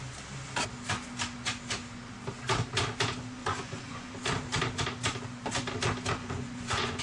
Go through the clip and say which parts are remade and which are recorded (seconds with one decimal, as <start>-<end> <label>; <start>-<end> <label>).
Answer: 0.0-3.4 recorded; 3.4-4.1 remade; 4.1-6.2 recorded; 6.2-7.0 remade